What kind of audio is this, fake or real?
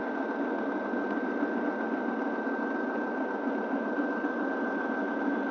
real